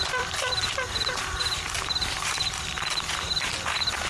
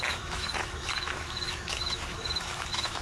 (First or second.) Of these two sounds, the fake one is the second